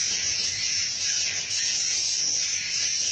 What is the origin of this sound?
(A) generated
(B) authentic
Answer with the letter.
B